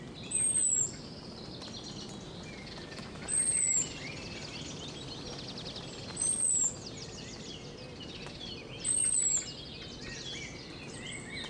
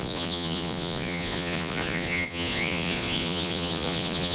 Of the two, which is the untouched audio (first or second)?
first